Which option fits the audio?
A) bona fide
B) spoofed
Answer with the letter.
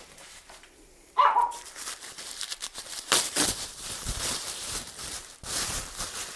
B